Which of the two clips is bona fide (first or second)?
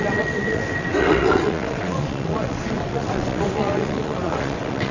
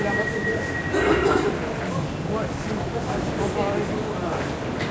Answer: second